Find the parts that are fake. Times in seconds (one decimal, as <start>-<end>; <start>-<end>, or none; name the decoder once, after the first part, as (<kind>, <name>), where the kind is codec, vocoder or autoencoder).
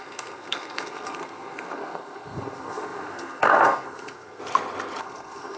0.0-4.4 (codec, SNAC); 5.0-5.6